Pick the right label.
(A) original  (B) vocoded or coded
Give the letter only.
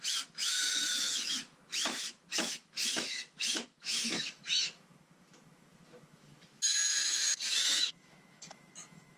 B